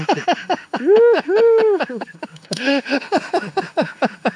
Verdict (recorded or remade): remade